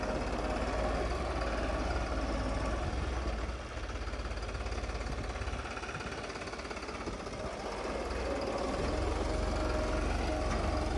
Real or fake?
real